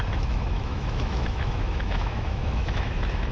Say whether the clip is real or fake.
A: fake